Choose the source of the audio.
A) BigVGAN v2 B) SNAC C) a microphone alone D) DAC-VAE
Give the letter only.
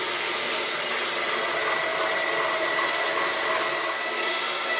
C